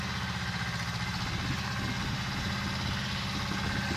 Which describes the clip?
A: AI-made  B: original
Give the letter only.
B